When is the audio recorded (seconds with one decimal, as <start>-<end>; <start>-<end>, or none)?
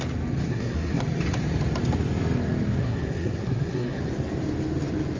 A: 0.0-0.5; 1.0-2.8; 4.0-5.2